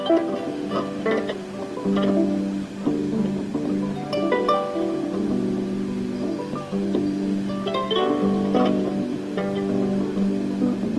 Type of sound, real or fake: real